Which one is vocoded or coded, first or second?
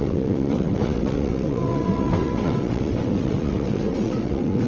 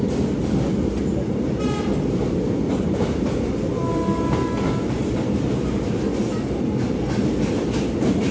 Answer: first